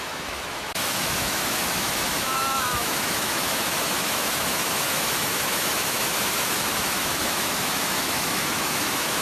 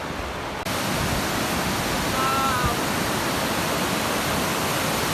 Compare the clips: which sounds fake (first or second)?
first